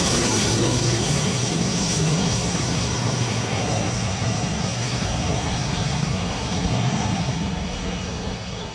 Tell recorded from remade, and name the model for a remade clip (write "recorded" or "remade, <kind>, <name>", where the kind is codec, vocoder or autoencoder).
remade, codec, SNAC